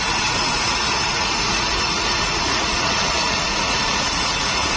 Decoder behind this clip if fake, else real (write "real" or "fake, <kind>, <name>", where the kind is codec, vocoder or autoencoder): fake, vocoder, Vocos